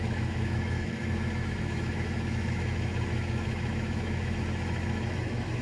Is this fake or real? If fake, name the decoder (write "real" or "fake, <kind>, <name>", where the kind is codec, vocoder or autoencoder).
fake, autoencoder, DAC-VAE